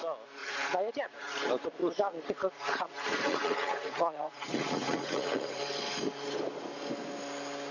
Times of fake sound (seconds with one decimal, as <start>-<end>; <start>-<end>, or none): 0.4-1.4; 1.8-5.6

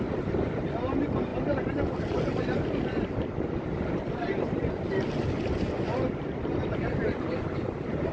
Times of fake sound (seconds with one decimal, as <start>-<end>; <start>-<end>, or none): none

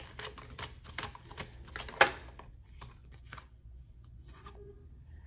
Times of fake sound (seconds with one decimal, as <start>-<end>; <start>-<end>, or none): 3.0-4.7

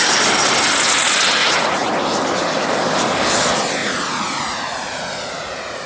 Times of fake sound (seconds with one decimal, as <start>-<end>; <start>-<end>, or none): 1.4-1.9; 3.8-5.9

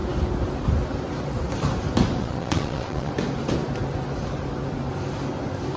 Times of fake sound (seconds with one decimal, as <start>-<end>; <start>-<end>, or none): 2.2-3.1